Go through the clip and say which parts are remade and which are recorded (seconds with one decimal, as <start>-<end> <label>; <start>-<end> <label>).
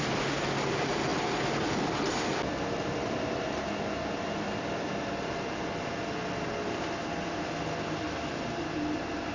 0.0-9.3 recorded